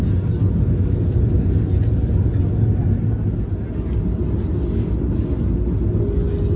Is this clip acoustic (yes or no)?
yes